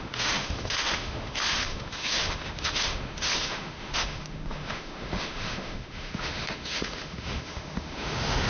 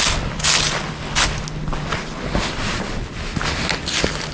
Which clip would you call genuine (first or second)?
second